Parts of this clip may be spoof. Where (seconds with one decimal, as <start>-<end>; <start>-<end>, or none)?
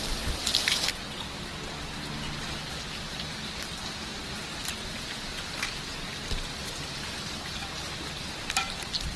none